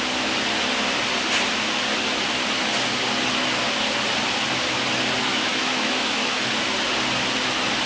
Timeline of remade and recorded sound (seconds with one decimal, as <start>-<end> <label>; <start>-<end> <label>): 0.0-5.3 recorded; 5.3-6.5 remade; 6.5-7.9 recorded